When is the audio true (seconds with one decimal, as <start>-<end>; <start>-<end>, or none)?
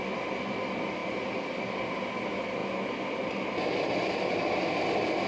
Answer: 0.0-5.3